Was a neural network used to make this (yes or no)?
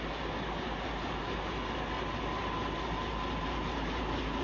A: no